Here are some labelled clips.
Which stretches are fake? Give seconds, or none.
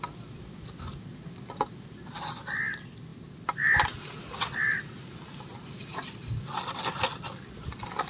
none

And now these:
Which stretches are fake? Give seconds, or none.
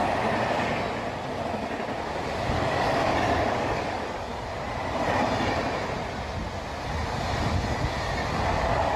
2.5-4.3 (codec, DAC); 8.5-9.0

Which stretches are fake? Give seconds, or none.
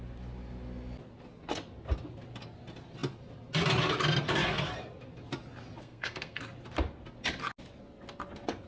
5.8-6.4 (codec, SNAC)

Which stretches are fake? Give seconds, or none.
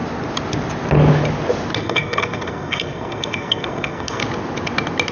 1.8-4.2 (codec, SNAC)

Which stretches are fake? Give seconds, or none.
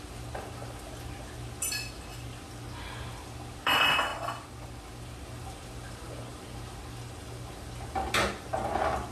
none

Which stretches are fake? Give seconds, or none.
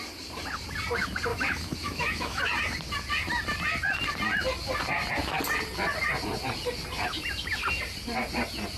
1.3-2.4 (autoencoder, DAC-VAE)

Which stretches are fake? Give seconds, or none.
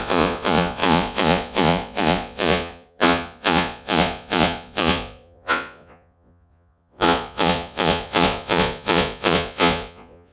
0.0-10.3 (vocoder, Vocos)